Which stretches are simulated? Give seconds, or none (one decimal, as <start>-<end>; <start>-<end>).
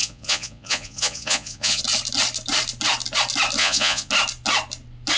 0.0-1.8; 3.6-4.1